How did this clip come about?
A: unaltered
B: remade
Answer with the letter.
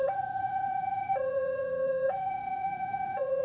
B